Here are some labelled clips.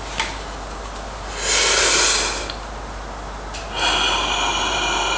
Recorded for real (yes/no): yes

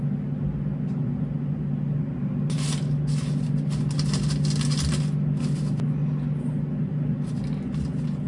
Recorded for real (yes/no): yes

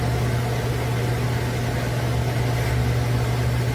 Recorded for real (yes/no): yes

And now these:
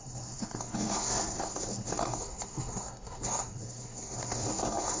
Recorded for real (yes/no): no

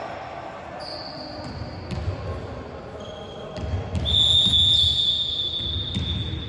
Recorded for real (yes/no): yes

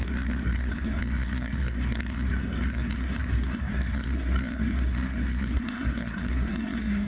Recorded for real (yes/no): no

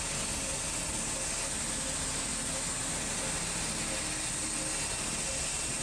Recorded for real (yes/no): yes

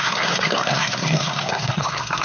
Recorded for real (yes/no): no